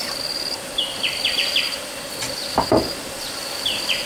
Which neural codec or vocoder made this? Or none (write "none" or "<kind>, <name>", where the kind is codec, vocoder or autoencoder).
none